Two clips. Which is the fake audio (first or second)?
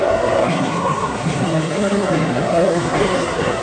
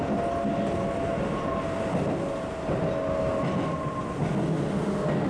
first